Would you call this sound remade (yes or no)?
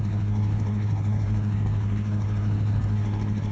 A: yes